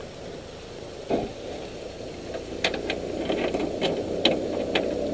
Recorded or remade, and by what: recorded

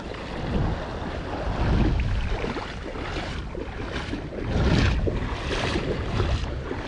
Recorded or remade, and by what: recorded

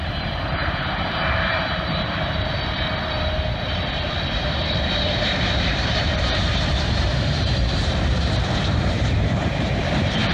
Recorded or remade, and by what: remade, vocoder, BigVGAN v2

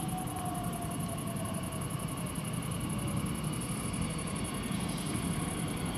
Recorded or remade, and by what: recorded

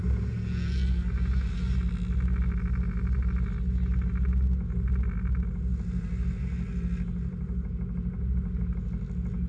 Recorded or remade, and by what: recorded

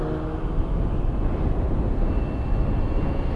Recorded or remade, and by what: recorded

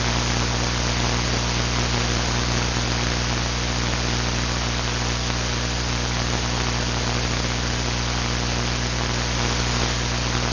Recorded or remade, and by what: recorded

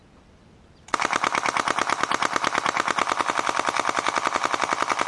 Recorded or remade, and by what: recorded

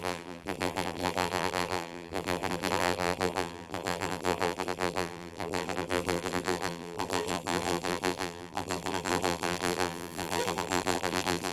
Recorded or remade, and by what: remade, vocoder, BigVGAN v2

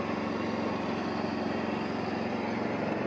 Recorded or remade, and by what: recorded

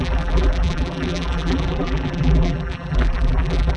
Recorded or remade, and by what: remade, vocoder, BigVGAN v2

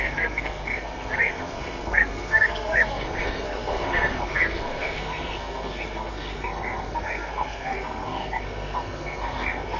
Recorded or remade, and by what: remade, codec, SNAC